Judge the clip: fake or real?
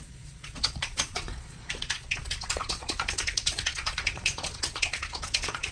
fake